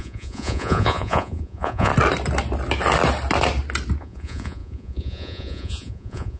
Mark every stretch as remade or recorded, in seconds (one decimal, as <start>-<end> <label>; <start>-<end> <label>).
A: 0.0-1.9 remade; 1.9-4.0 recorded; 4.0-6.4 remade